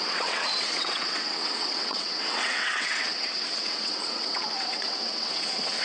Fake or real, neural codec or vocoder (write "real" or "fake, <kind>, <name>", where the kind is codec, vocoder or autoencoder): fake, vocoder, WaveNeXt